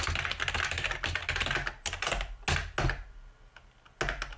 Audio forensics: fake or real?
real